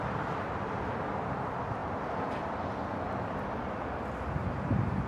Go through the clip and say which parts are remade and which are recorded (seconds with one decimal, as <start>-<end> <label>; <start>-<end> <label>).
0.0-1.8 remade; 1.8-5.1 recorded